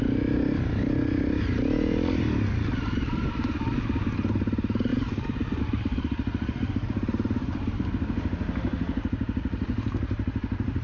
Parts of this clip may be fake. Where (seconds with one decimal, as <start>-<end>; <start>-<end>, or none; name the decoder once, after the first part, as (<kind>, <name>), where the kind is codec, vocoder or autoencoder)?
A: 4.9-5.6 (vocoder, BigVGAN v2)